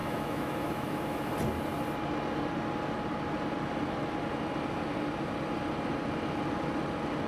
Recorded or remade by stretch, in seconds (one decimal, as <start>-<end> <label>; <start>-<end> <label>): 0.0-1.3 remade; 1.3-7.3 recorded